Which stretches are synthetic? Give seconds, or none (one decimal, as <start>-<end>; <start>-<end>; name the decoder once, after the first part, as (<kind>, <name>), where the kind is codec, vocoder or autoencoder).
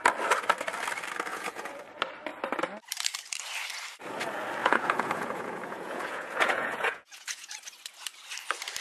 1.3-1.8 (vocoder, Vocos); 4.6-7.5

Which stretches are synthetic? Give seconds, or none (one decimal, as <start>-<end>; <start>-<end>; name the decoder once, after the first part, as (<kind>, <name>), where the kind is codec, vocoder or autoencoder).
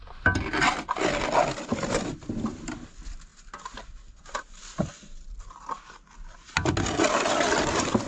none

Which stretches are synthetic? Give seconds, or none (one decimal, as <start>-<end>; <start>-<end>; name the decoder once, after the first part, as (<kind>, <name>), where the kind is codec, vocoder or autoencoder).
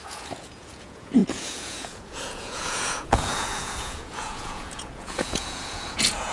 0.0-6.3 (vocoder, Vocos)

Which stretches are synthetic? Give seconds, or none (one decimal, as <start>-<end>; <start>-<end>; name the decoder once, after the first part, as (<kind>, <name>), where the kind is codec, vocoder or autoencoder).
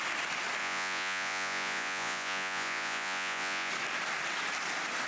0.6-3.7 (vocoder, Vocos)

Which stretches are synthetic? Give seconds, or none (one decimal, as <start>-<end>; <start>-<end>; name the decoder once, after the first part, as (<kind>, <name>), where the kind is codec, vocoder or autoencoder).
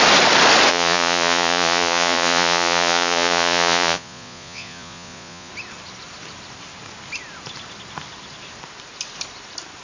0.7-5.5 (vocoder, Vocos)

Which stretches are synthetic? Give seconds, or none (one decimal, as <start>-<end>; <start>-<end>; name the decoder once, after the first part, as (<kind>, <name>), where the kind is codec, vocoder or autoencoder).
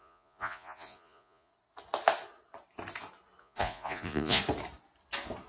0.0-1.5 (vocoder, Vocos); 3.4-4.4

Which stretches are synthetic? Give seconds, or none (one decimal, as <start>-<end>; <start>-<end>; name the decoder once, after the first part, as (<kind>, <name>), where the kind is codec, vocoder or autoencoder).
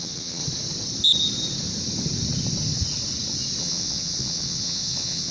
0.0-0.4 (vocoder, Vocos); 3.6-5.3